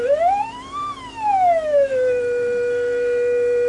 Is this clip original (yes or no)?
no